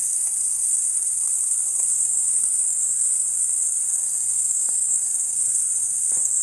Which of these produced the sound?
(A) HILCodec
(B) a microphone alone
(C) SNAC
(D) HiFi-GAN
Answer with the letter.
C